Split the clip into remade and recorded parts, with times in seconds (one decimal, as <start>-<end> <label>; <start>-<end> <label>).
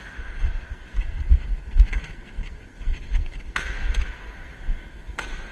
0.0-5.5 remade